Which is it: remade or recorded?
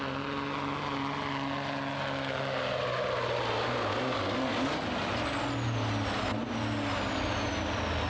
recorded